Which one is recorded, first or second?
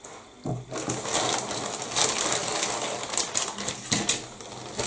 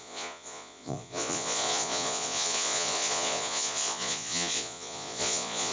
first